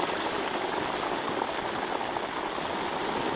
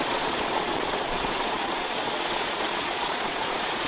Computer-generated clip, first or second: second